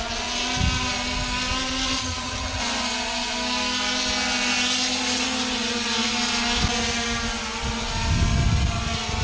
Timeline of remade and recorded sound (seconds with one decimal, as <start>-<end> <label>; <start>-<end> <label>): 0.0-2.0 recorded; 2.0-2.6 remade; 2.6-9.2 recorded